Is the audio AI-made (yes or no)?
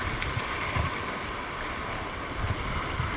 no